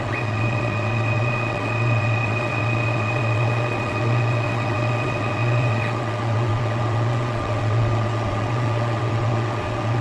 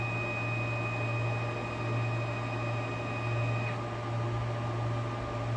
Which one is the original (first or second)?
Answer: second